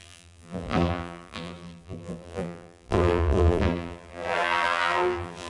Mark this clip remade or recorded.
remade